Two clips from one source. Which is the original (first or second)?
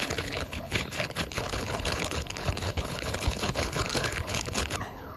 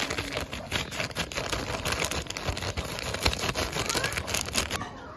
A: second